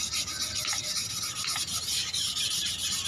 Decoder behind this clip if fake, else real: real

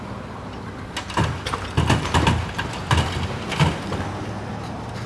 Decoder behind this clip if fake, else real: real